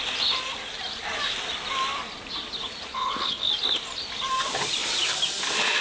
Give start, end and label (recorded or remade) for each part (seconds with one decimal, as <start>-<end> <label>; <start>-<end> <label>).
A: 0.0-2.9 recorded; 2.9-3.5 remade; 3.5-5.8 recorded